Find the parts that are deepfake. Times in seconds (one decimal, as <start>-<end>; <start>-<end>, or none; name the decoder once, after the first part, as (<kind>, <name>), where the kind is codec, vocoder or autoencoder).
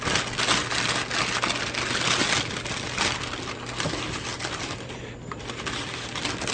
none